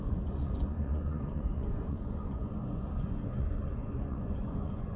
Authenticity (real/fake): fake